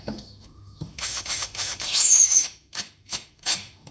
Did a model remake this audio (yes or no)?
yes